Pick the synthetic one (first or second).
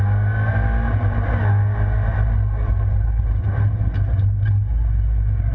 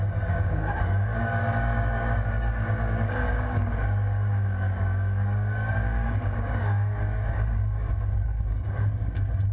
second